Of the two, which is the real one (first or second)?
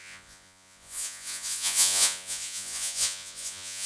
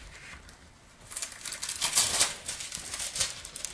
second